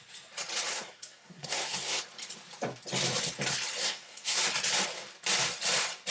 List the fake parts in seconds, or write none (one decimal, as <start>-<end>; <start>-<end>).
0.7-2.0; 3.8-4.4